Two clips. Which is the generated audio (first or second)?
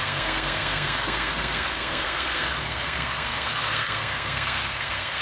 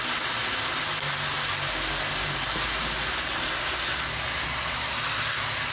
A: first